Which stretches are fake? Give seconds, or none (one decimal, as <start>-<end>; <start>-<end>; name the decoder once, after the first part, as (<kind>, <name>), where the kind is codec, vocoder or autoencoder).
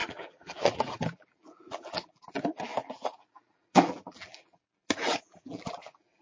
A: 0.0-6.2 (vocoder, BigVGAN v2)